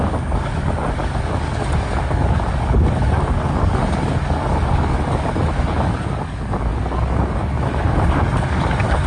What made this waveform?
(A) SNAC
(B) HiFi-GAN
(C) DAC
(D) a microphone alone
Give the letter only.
C